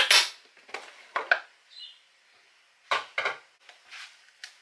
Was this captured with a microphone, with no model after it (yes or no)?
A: yes